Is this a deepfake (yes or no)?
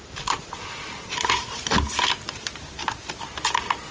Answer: no